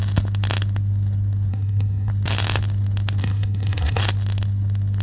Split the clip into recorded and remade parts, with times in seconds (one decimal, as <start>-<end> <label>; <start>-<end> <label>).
0.0-1.5 recorded; 1.5-2.1 remade; 2.1-3.2 recorded; 3.2-4.0 remade; 4.0-5.0 recorded